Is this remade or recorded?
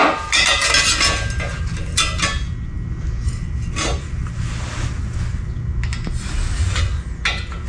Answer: recorded